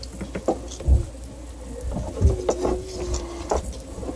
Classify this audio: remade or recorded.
recorded